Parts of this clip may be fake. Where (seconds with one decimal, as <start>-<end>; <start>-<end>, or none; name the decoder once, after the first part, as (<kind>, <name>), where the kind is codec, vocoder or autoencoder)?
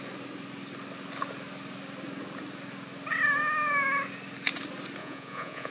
5.0-5.7 (vocoder, Vocos)